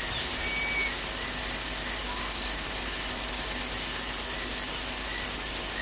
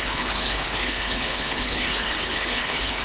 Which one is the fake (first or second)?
second